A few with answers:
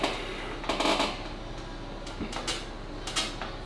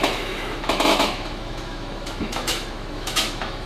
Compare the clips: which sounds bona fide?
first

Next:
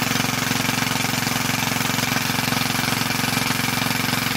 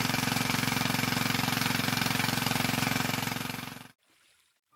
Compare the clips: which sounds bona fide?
first